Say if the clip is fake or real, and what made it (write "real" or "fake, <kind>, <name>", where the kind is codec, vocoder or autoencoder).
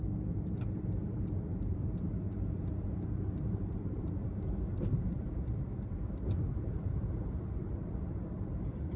fake, vocoder, BigVGAN v2